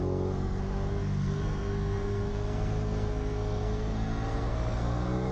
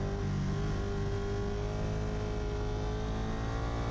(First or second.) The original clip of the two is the second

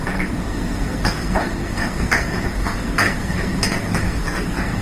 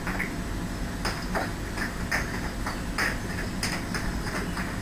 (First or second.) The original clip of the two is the second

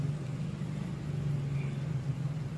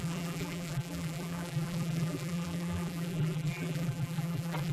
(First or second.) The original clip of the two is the first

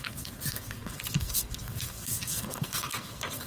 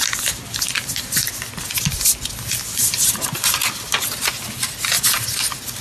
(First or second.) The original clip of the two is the second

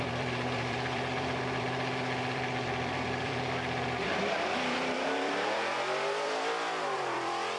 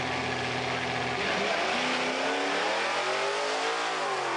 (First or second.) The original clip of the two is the second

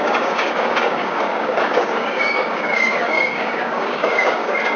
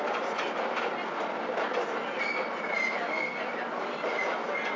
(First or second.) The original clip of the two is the second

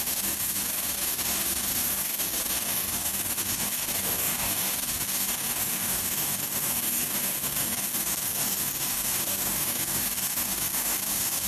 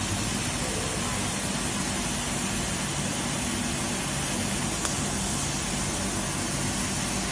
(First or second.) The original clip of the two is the second